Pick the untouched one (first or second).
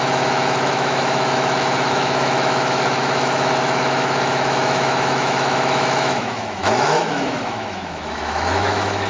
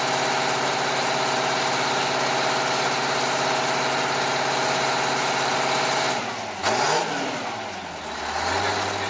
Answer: second